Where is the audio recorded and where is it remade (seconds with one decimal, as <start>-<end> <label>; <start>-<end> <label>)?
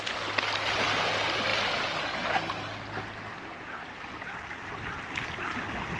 0.0-6.0 recorded